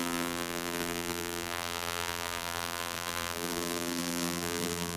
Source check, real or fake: fake